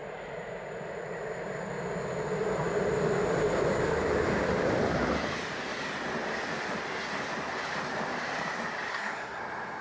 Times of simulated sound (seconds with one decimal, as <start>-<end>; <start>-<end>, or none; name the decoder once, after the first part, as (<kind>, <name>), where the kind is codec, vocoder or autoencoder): 8.9-9.4 (codec, SNAC)

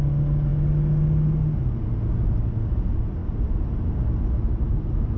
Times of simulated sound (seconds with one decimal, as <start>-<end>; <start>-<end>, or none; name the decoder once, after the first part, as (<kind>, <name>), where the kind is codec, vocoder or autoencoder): none